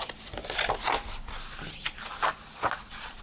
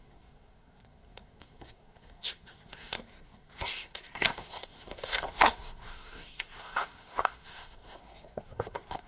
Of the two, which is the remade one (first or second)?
second